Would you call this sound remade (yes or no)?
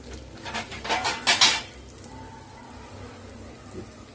no